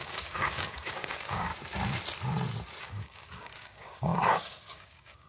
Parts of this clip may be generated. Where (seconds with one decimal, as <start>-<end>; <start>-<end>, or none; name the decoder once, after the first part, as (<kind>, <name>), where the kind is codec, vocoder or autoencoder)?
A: 0.0-1.5 (codec, DAC); 2.8-5.3